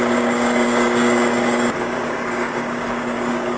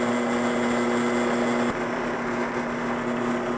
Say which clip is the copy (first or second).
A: first